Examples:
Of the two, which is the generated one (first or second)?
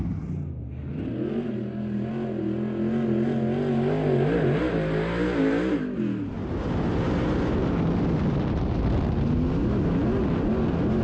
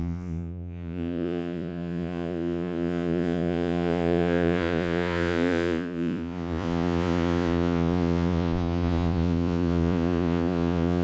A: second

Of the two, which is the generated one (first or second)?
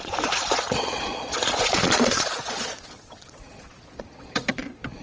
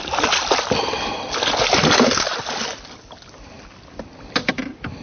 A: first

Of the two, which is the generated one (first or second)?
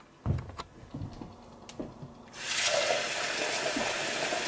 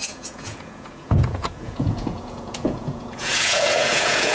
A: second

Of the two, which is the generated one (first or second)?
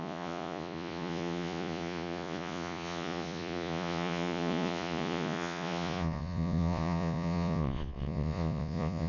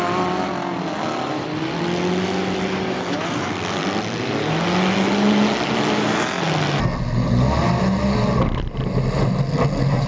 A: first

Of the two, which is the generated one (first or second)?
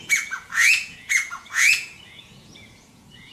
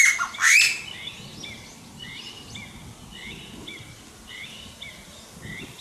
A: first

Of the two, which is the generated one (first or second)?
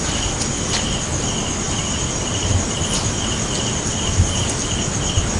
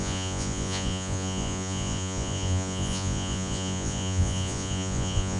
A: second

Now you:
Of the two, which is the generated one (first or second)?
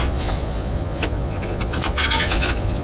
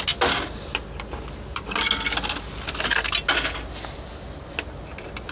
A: first